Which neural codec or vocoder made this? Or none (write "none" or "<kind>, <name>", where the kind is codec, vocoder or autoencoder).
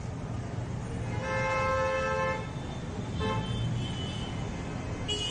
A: none